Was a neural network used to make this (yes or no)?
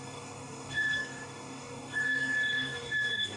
yes